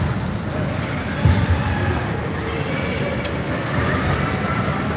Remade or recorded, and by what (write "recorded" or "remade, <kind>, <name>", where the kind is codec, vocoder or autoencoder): recorded